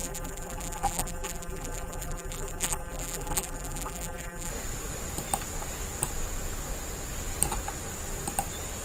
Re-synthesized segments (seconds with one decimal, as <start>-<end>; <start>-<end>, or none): 0.0-4.5